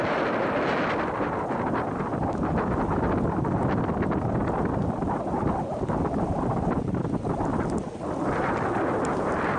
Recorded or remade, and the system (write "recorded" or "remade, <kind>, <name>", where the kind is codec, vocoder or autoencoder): recorded